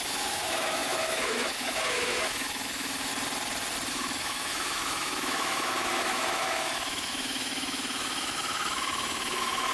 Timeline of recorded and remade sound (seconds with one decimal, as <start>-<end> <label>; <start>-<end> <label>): 0.0-3.1 remade; 3.1-3.9 recorded; 3.9-9.7 remade